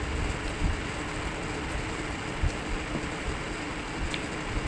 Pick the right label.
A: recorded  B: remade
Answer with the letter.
A